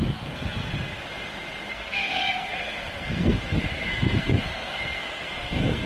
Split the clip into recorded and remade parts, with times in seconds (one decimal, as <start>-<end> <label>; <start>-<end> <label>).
0.0-0.7 remade; 0.7-1.7 recorded; 1.7-5.9 remade